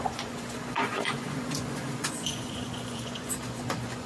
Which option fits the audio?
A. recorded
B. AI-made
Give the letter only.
B